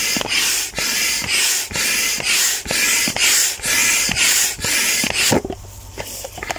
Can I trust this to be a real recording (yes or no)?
yes